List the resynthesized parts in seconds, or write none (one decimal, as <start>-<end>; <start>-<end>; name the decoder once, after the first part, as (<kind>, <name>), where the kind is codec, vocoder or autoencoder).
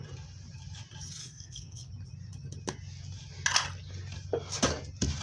1.2-1.9 (codec, SNAC)